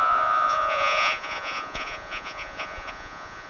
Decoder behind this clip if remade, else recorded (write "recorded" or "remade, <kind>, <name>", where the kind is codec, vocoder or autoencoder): remade, vocoder, Vocos